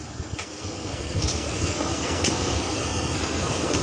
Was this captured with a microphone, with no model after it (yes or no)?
no